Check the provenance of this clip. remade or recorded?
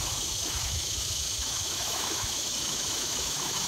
remade